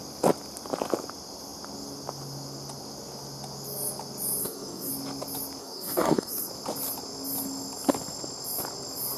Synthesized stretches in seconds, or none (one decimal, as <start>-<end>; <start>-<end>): 4.4-4.9; 5.6-6.5